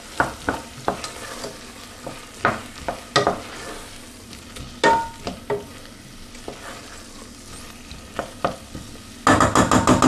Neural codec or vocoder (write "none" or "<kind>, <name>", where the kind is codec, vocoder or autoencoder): none